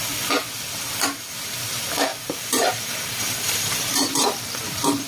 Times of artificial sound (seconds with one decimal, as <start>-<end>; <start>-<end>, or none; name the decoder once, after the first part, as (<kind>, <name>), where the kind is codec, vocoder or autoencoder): 2.1-4.6 (vocoder, BigVGAN v2)